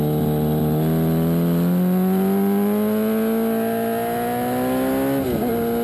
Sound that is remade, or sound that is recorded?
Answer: recorded